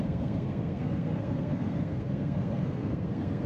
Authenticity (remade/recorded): remade